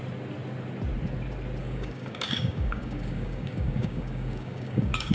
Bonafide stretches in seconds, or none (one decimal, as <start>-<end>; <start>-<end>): 0.0-1.6